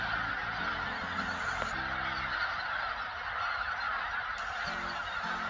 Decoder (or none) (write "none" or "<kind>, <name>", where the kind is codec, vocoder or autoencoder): none